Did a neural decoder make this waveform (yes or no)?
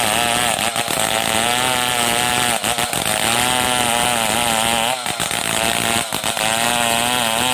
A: no